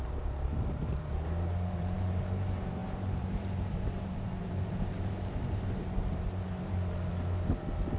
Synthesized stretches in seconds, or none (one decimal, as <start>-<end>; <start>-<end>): 0.0-8.0